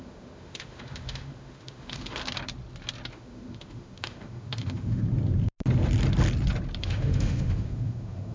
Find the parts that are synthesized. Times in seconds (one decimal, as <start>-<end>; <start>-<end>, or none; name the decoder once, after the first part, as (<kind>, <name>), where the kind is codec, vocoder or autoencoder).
0.0-2.2 (autoencoder, DAC-VAE); 3.1-5.0; 6.8-8.3